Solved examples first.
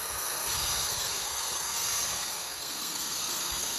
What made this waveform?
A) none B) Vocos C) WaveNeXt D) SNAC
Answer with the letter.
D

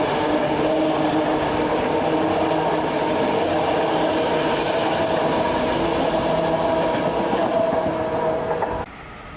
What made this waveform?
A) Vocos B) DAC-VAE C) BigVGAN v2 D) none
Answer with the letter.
D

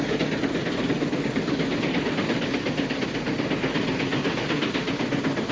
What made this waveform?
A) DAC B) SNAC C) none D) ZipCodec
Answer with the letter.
C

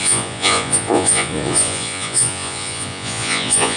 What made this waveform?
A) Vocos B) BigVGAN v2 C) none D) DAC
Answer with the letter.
A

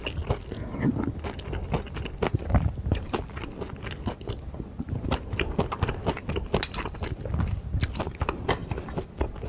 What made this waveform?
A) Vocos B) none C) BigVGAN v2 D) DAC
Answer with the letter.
B